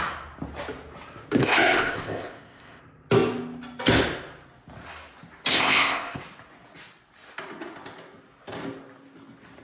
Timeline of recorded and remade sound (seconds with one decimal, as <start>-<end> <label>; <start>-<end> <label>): 0.0-1.4 recorded; 1.4-2.8 remade; 2.8-5.5 recorded; 5.5-6.2 remade; 6.2-9.6 recorded